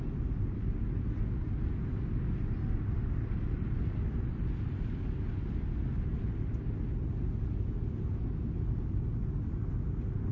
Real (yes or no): yes